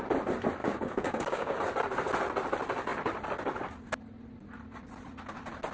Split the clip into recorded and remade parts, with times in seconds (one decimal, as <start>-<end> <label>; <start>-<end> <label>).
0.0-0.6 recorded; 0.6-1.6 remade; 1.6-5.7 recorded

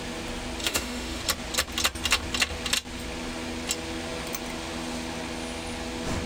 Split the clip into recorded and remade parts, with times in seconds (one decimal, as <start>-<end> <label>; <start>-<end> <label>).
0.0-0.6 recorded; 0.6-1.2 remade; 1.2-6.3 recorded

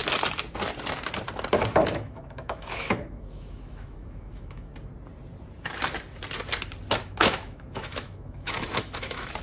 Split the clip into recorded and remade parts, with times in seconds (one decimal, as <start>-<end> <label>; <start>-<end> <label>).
0.0-1.7 recorded; 1.7-4.7 remade; 4.7-7.0 recorded; 7.0-9.4 remade

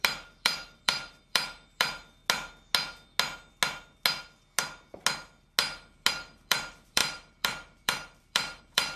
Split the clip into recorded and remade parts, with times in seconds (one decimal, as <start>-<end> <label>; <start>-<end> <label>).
0.0-2.2 remade; 2.2-6.1 recorded; 6.1-9.0 remade

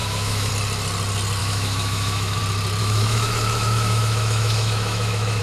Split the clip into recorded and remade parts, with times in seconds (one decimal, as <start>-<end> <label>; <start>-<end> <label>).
0.0-0.5 remade; 0.5-1.4 recorded; 1.4-2.4 remade; 2.4-2.8 recorded; 2.8-5.4 remade

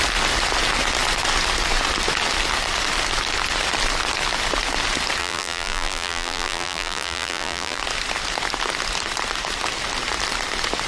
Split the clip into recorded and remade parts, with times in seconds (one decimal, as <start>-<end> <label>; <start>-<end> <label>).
0.0-5.2 recorded; 5.2-7.8 remade; 7.8-10.9 recorded